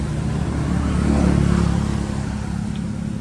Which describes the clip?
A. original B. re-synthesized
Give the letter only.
A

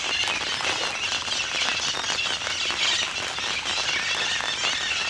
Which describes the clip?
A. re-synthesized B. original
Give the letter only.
B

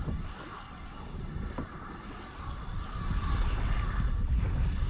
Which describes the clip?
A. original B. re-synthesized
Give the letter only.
A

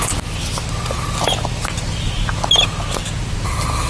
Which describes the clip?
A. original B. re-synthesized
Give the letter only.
A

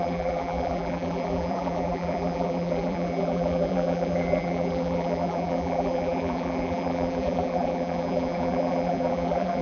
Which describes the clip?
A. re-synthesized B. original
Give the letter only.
A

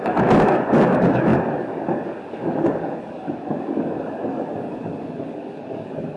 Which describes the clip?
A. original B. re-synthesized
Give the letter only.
B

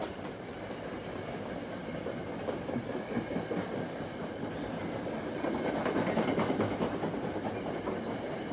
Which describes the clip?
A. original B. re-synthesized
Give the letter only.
A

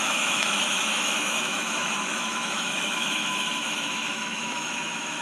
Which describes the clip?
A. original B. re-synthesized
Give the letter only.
B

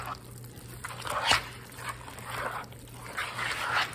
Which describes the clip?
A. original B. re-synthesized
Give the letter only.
A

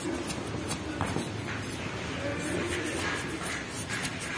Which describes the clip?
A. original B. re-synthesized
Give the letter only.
A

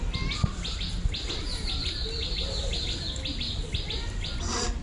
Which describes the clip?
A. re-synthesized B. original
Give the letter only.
B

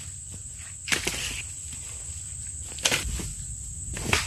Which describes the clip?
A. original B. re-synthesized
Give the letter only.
A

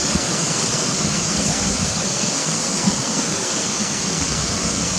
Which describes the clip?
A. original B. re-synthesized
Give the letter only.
B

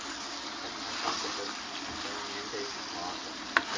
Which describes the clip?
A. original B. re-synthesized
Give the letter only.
A